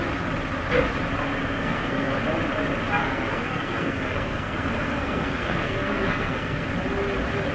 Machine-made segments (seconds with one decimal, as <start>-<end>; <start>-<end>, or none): 1.4-2.1; 3.0-6.7